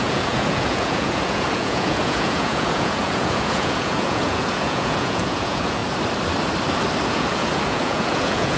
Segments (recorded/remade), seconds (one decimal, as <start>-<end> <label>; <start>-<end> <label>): 0.0-5.8 remade; 5.8-7.1 recorded; 7.1-8.6 remade

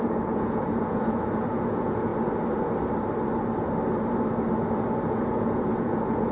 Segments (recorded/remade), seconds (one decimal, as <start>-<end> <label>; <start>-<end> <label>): 0.0-2.1 remade; 2.1-5.0 recorded; 5.0-6.3 remade

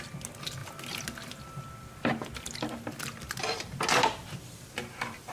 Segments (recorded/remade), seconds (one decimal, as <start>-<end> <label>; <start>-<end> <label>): 0.0-5.3 recorded

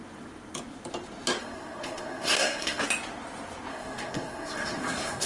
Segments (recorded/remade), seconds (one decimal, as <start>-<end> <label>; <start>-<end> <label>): 0.0-1.4 recorded; 1.4-2.8 remade; 2.8-3.7 recorded; 3.7-5.3 remade

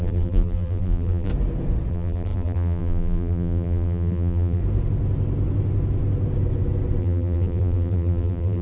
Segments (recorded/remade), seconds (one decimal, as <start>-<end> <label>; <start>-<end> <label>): 0.0-1.3 remade; 1.3-1.9 recorded; 1.9-4.6 remade; 4.6-7.0 recorded; 7.0-8.6 remade

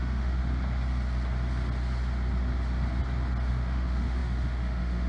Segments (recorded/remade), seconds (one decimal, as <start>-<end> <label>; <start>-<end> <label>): 0.0-0.4 remade; 0.4-3.5 recorded; 3.5-5.1 remade